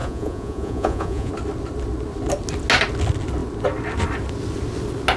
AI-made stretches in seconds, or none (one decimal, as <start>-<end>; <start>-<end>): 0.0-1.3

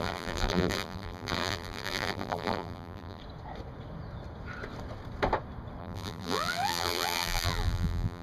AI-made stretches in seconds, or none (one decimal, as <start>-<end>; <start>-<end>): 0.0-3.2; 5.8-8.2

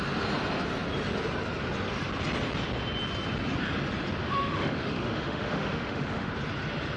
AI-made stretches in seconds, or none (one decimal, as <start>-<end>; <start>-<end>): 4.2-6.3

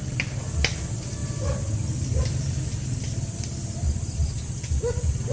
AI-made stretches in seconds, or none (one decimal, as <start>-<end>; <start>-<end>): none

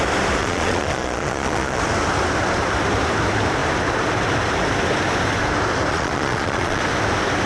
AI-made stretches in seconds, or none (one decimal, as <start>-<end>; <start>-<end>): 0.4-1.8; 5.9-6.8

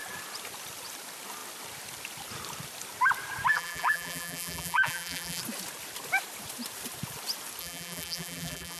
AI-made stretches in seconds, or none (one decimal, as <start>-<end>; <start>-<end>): 3.5-5.4; 7.6-8.8